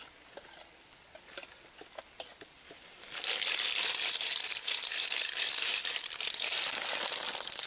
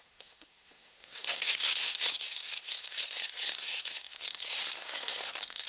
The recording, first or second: first